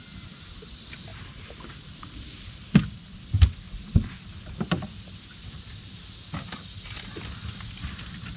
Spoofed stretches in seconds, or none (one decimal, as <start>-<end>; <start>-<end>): none